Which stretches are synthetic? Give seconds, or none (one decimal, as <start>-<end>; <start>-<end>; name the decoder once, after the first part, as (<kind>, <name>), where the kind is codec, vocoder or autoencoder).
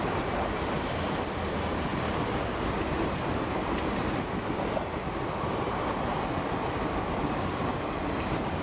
none